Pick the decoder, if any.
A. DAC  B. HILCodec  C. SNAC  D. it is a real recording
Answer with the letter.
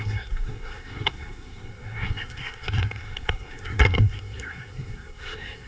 C